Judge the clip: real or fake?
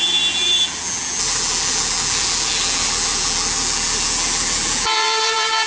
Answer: fake